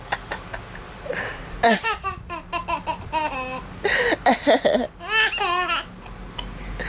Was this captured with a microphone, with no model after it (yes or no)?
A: yes